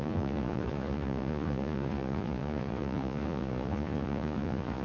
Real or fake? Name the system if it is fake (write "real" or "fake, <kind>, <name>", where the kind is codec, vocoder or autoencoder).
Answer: fake, vocoder, Vocos